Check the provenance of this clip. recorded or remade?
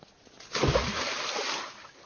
remade